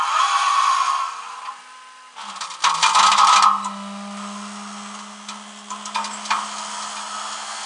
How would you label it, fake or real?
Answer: real